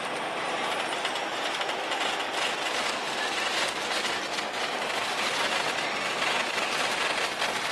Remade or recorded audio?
recorded